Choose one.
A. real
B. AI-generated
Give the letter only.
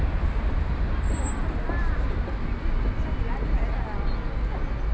A